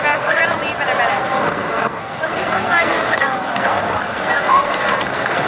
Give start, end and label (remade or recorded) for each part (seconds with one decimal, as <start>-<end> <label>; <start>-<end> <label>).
0.0-0.4 remade; 0.4-1.1 recorded; 1.1-5.5 remade